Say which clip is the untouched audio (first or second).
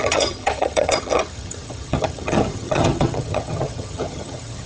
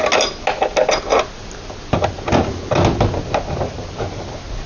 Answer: second